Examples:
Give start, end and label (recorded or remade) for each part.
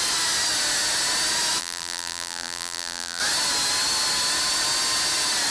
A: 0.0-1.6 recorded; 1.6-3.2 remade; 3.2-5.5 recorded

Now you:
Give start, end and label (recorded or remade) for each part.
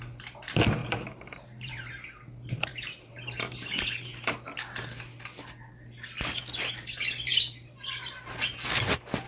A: 0.0-0.8 recorded; 0.8-1.7 remade; 1.7-2.7 recorded; 2.7-4.5 remade; 4.5-7.3 recorded; 7.3-8.4 remade; 8.4-9.3 recorded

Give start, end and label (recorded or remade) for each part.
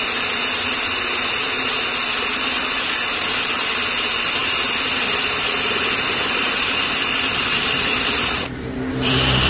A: 0.0-4.4 recorded; 4.4-9.5 remade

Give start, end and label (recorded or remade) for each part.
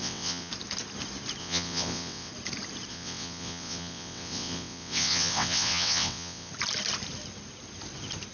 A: 0.0-0.5 remade; 0.5-1.4 recorded; 1.4-2.3 remade; 2.3-2.9 recorded; 2.9-6.5 remade; 6.5-8.3 recorded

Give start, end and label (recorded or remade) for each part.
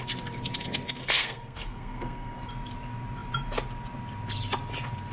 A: 0.0-1.0 recorded; 1.0-2.5 remade; 2.5-5.1 recorded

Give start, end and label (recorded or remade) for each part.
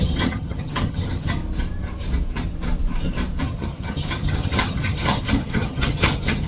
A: 0.0-1.4 remade; 1.4-3.4 recorded; 3.4-6.5 remade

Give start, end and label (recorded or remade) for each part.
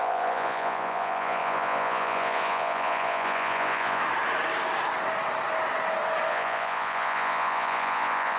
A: 0.0-4.0 remade; 4.0-6.3 recorded; 6.3-8.4 remade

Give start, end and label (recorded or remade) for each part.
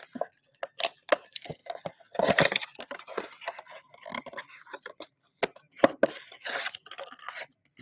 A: 0.0-7.8 recorded